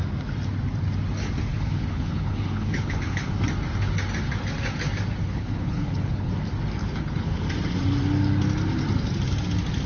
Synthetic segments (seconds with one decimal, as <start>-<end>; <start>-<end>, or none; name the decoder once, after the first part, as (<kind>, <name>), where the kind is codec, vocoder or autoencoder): 1.5-3.3 (codec, HILCodec); 5.2-6.3; 6.8-7.4